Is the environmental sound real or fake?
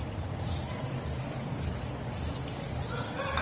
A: real